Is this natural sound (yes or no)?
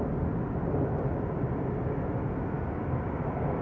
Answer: yes